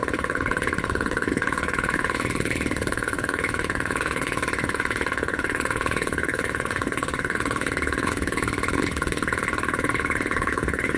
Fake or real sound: fake